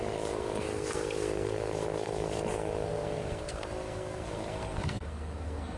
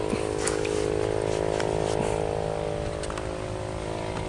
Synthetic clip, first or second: first